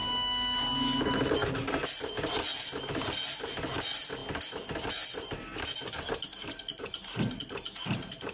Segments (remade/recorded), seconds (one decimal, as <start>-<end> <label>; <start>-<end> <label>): 0.0-8.3 recorded